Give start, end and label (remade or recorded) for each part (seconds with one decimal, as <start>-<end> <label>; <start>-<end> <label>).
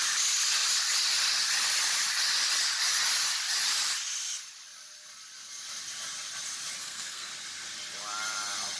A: 0.0-6.8 recorded; 6.8-7.3 remade; 7.3-8.8 recorded